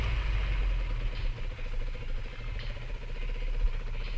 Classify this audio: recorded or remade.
recorded